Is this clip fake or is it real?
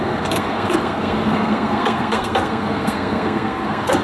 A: fake